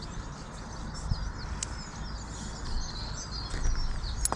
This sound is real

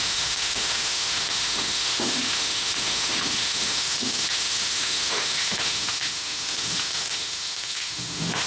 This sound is fake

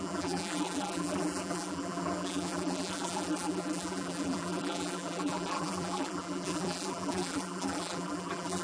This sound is fake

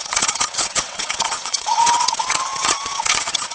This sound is fake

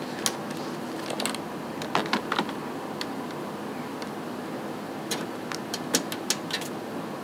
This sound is real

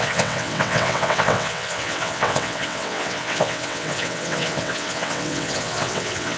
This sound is fake